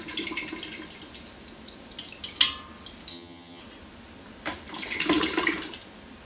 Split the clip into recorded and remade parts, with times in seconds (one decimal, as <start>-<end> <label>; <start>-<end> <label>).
0.0-3.1 recorded; 3.1-3.6 remade; 3.6-6.3 recorded